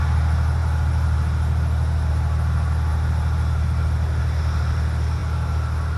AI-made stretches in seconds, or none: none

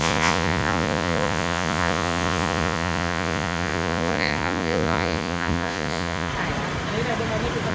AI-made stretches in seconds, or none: 0.0-6.3 (vocoder, Vocos)

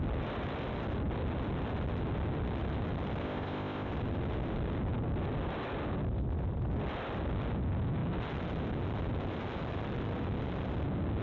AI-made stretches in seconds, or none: 3.2-3.9 (codec, ZipCodec)

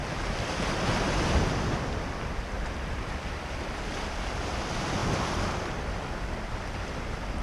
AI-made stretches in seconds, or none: none

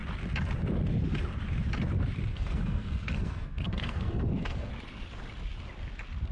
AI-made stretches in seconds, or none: 2.3-4.7 (codec, SNAC)

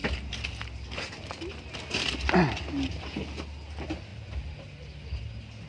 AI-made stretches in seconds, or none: none